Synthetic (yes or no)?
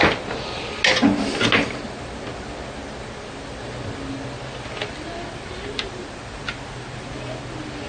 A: no